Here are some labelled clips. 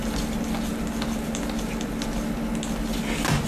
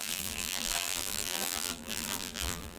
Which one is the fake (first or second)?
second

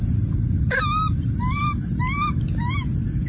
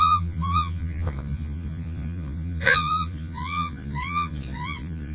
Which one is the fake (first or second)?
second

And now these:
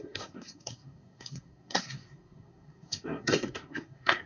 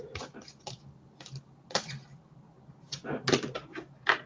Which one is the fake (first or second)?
first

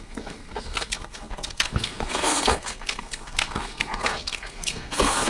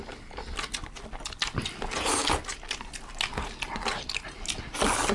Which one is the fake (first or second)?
first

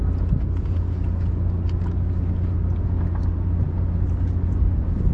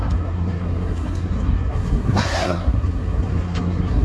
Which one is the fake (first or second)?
second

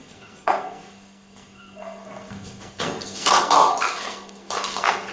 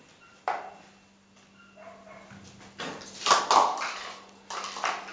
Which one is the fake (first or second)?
first